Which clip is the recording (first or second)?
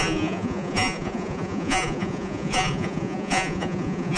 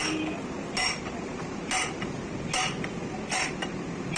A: second